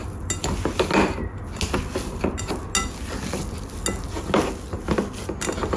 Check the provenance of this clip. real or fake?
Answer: real